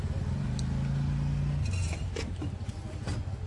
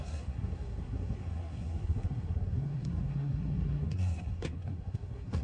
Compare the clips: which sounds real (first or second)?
first